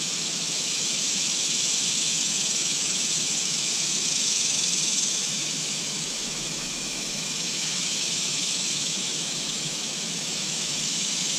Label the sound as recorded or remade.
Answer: remade